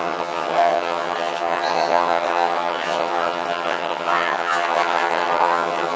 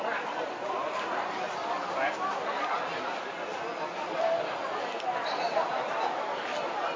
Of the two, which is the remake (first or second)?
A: first